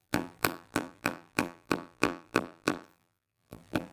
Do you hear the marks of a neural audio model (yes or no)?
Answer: yes